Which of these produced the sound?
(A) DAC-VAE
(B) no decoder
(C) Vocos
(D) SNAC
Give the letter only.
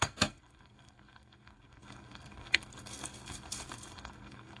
D